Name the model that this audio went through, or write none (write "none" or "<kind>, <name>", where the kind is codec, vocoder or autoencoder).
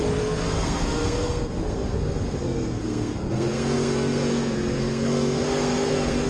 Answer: codec, SNAC